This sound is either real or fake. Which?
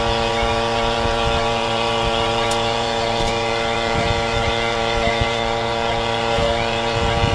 fake